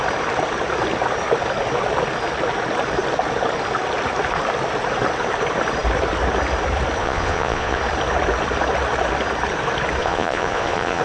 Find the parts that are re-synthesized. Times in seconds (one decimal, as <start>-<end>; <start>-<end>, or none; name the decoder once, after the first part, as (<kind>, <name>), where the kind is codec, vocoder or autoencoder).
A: 7.0-7.8 (vocoder, Vocos); 10.0-11.0